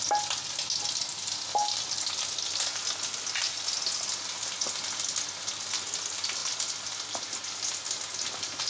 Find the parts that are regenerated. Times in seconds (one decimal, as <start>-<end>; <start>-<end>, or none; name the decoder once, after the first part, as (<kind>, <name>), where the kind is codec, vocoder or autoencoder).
none